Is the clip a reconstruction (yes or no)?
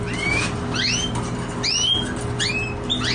no